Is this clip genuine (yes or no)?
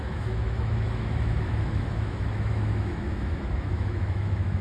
no